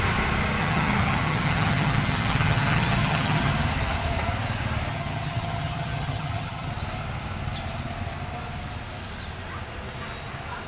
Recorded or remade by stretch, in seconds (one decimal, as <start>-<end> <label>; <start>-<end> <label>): 0.0-0.6 recorded; 0.6-3.5 remade; 3.5-4.9 recorded; 4.9-6.7 remade; 6.7-10.7 recorded